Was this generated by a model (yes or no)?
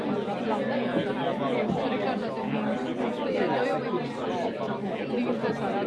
no